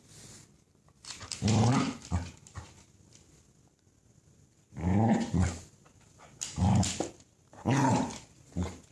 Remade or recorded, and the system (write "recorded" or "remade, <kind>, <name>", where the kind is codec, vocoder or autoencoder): recorded